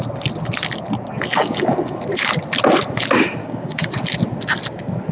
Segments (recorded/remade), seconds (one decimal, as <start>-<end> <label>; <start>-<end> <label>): 0.0-1.4 recorded; 1.4-2.0 remade; 2.0-3.4 recorded; 3.4-3.9 remade; 3.9-5.1 recorded